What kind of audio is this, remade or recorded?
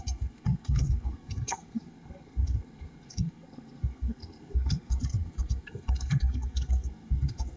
remade